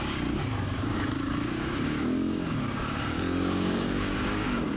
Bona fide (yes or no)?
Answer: no